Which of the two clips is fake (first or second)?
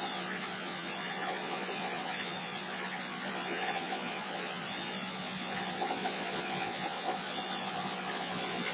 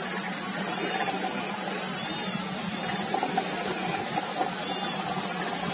first